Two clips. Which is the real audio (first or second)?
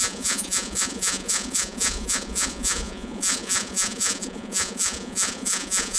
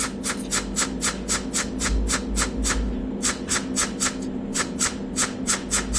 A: second